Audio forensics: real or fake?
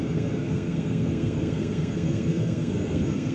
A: fake